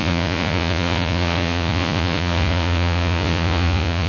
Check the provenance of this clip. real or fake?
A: fake